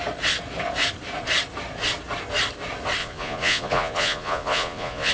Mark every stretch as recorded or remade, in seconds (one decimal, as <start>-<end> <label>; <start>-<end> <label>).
0.0-3.0 recorded; 3.0-5.1 remade